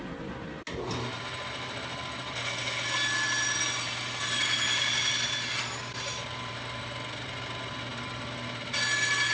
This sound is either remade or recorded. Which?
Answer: recorded